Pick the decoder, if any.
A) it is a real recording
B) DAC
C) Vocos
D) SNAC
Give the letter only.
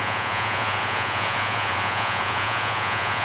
C